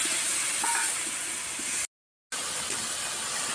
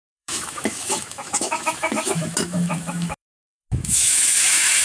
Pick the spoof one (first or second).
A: second